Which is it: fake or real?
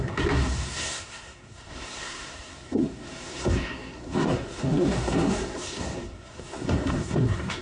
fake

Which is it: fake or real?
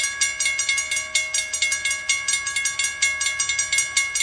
real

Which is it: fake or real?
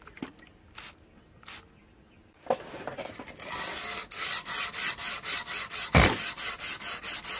real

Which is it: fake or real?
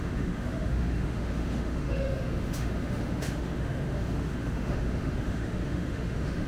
fake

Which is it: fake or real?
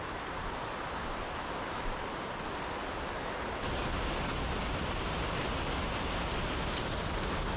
real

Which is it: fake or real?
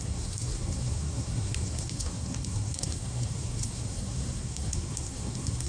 fake